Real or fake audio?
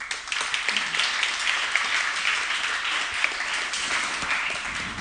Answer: real